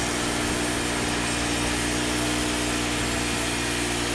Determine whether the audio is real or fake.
real